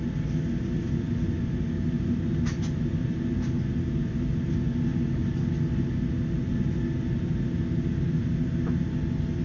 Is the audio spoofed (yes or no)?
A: no